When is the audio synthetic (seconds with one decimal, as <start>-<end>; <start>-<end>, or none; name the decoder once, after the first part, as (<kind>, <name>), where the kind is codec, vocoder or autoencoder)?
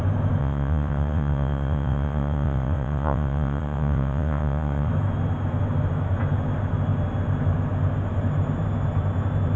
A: 0.4-4.9 (vocoder, WaveNeXt)